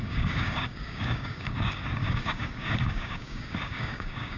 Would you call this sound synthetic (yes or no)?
yes